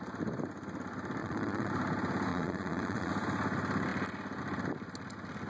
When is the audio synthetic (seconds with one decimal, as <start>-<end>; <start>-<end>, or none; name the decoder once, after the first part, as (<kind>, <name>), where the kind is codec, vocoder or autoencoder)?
1.2-1.7 (vocoder, Vocos); 2.3-3.1